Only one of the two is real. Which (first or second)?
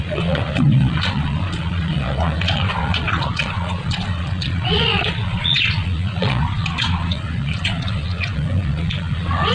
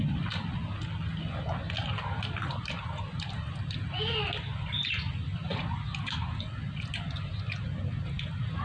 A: second